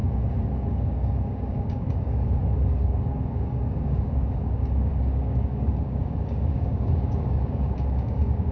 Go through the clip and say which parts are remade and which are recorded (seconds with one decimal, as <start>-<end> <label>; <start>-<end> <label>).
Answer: 0.0-0.7 recorded; 0.7-8.5 remade